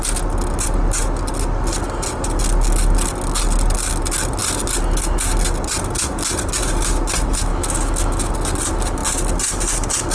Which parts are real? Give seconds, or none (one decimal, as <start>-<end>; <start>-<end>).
0.0-7.5; 8.3-10.1